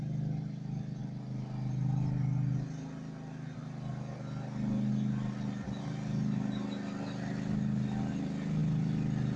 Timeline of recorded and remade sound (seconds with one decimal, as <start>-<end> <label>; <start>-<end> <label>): 0.0-9.4 recorded